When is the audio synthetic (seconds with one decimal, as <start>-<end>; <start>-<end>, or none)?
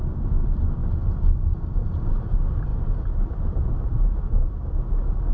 0.8-2.1